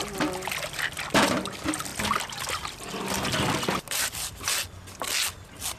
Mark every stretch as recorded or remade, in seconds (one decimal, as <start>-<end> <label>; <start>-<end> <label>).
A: 0.0-5.8 recorded